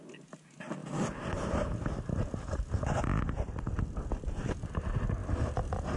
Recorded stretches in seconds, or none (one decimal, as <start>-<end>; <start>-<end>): 0.0-0.8; 4.4-6.0